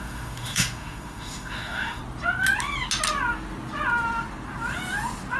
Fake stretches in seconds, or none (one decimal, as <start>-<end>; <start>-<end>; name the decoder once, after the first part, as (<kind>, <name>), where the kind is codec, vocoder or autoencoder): 0.0-2.0 (autoencoder, DAC-VAE)